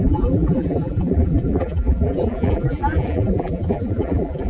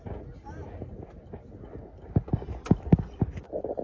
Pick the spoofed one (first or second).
first